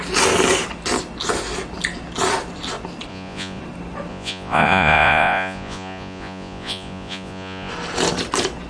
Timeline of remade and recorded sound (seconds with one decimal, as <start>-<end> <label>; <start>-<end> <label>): 0.0-3.1 recorded; 3.1-3.6 remade; 3.6-4.1 recorded; 4.1-7.7 remade; 7.7-8.7 recorded